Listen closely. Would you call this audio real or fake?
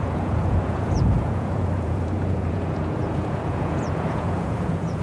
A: fake